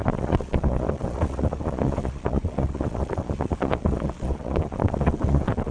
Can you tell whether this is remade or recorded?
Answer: remade